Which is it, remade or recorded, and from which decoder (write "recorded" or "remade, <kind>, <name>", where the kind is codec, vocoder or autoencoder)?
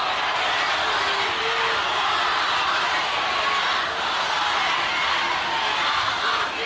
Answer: recorded